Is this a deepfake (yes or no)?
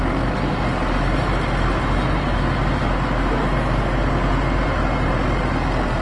no